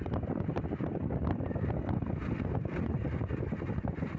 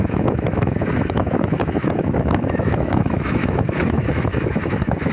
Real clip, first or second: first